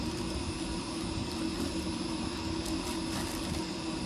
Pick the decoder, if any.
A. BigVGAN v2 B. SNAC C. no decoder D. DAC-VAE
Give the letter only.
C